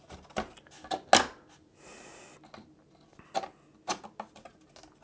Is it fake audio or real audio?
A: real